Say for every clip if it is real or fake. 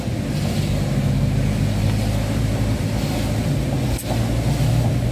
real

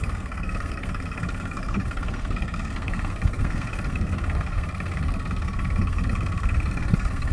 fake